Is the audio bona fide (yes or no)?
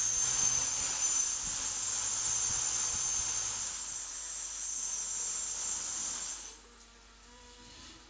no